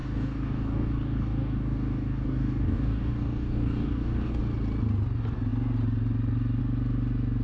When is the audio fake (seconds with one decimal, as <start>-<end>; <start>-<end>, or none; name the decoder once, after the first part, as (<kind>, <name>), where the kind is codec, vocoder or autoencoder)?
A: 0.0-4.4 (codec, DAC)